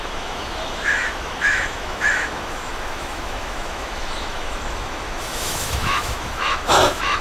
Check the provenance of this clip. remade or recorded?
remade